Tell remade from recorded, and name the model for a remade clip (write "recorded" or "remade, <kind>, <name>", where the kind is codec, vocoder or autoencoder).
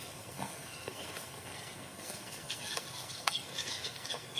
remade, codec, SNAC